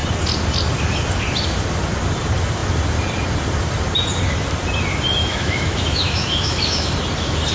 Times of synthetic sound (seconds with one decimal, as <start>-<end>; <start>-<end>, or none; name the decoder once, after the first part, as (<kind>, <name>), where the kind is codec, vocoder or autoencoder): 5.2-6.9 (autoencoder, DAC-VAE)